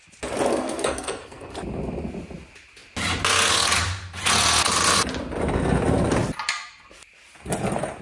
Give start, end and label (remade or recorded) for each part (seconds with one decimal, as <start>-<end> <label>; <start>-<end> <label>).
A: 0.0-0.5 recorded; 0.5-1.5 remade; 1.5-8.0 recorded